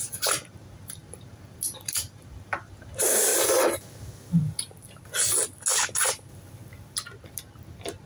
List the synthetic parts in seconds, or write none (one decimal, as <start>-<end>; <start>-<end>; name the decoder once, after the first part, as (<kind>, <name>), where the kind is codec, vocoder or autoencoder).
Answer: 0.0-3.3 (vocoder, BigVGAN v2)